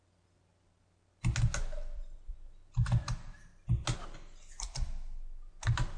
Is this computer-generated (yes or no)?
no